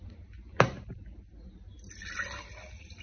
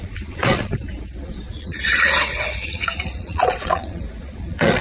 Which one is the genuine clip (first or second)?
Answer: first